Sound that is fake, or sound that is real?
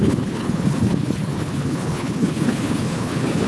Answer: fake